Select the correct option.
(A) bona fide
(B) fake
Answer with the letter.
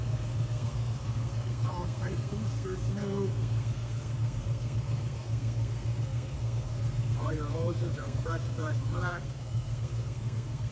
B